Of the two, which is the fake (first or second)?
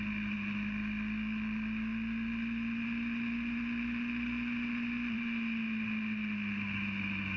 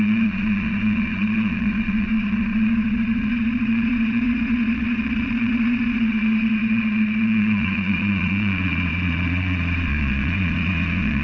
second